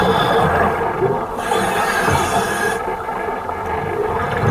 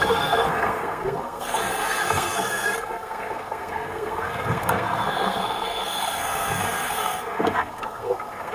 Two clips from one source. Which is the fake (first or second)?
second